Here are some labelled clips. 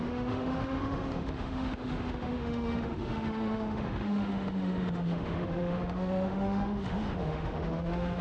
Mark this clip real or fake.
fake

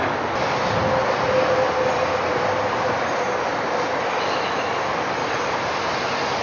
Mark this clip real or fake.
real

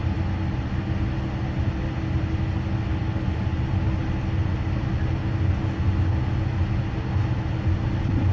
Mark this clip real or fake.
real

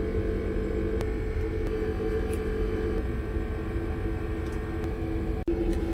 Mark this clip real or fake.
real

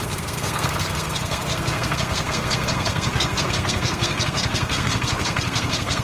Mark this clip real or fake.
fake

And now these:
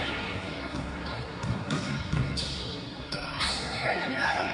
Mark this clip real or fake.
fake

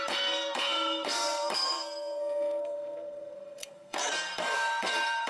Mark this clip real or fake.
fake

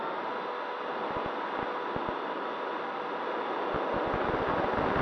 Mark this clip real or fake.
real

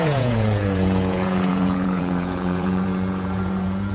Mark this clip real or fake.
fake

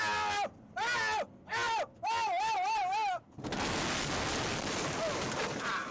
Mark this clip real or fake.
real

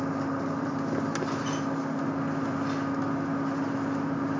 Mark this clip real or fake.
real